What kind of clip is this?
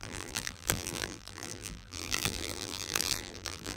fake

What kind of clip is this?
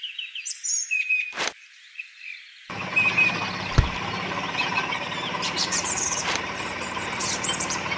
fake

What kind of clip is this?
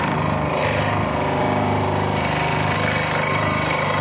fake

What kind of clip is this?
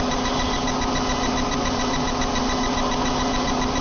real